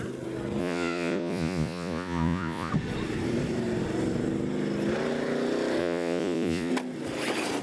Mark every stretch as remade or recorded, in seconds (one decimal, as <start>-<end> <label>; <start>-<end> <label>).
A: 0.0-0.6 recorded; 0.6-2.7 remade; 2.7-5.8 recorded; 5.8-6.7 remade; 6.7-7.6 recorded